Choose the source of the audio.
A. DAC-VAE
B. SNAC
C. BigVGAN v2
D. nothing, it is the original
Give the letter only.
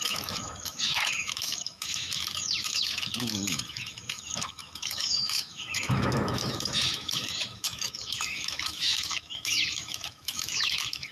A